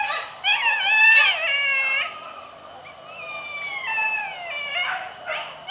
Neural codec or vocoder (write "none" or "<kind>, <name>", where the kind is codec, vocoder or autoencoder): none